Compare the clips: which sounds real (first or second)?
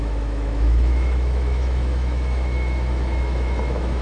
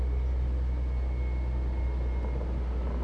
second